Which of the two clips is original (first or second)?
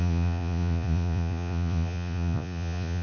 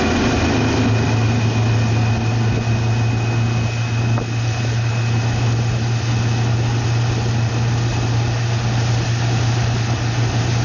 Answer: second